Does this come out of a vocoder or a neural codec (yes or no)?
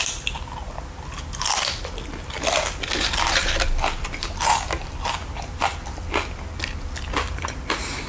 no